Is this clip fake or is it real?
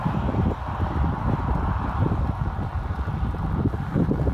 real